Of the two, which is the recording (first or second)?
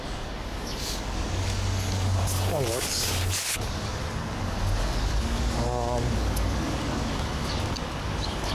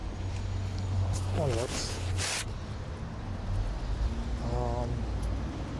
second